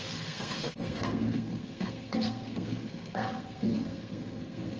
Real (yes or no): no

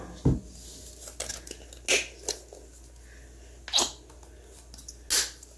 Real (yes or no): yes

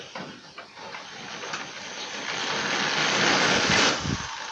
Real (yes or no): yes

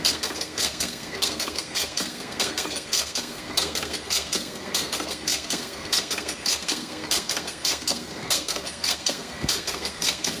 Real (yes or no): no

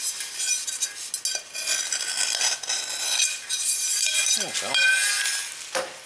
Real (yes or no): yes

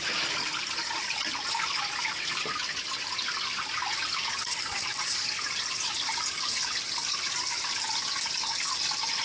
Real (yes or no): yes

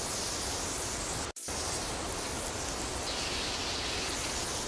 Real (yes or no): yes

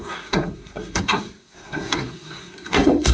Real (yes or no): no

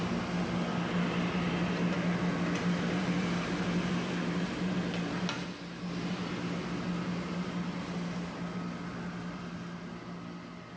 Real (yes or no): yes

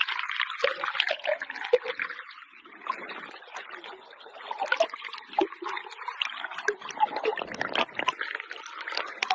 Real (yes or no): yes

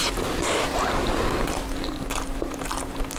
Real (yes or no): yes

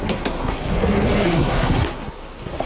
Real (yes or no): no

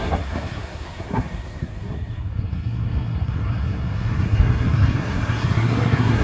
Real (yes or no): no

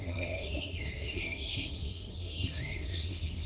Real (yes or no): no